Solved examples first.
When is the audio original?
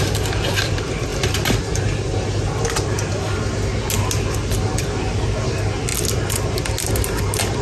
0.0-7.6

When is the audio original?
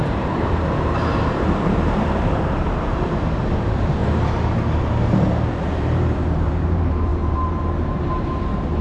4.0-5.5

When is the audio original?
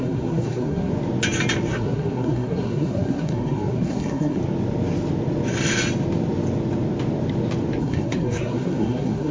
0.9-1.7; 4.4-7.8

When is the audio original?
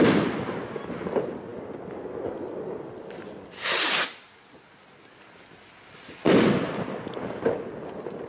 0.0-8.3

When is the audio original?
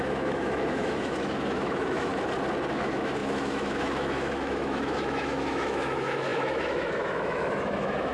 2.1-2.7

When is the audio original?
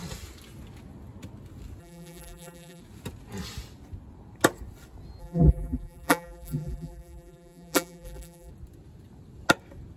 0.0-1.8; 2.8-5.2; 8.5-10.0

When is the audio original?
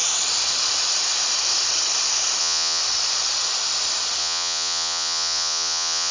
0.0-2.4; 2.8-4.2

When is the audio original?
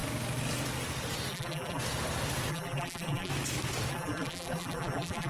0.0-1.3; 1.8-2.5; 3.3-3.9